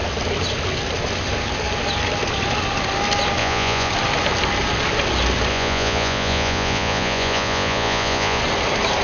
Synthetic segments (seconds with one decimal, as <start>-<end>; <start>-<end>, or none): 3.4-3.9; 5.5-8.4

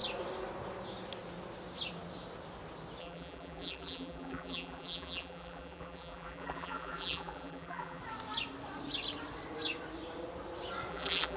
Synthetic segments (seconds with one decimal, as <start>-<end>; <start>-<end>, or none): 3.0-8.0; 10.9-11.4

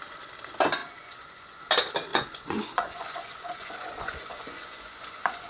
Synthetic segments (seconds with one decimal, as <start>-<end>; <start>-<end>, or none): 0.8-1.6; 2.1-5.5